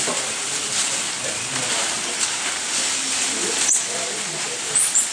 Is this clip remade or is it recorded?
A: recorded